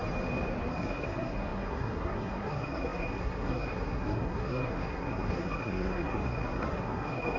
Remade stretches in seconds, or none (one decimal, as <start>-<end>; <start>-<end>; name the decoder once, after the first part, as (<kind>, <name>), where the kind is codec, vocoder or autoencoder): 0.7-7.4 (codec, SNAC)